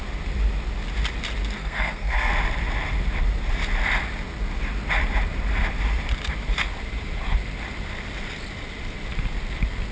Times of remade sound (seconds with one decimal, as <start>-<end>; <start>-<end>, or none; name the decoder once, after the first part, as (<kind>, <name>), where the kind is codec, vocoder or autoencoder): 1.6-2.3 (codec, SNAC)